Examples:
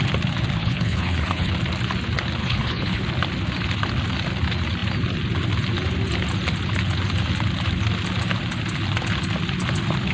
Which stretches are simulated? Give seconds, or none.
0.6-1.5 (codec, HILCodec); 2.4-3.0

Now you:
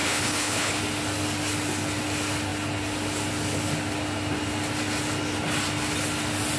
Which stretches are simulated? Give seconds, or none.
0.0-0.8 (codec, HILCodec)

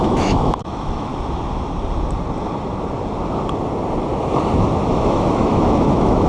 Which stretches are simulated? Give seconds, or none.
0.0-1.1 (autoencoder, DAC-VAE); 4.9-6.3

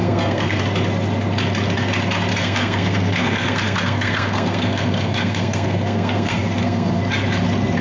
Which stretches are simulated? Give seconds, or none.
0.0-0.6 (codec, SNAC); 2.3-7.0